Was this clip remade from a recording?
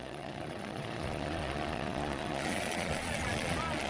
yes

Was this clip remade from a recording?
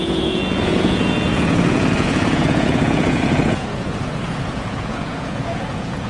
yes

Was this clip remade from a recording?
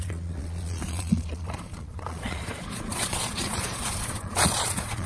yes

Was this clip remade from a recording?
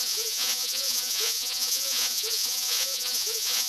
yes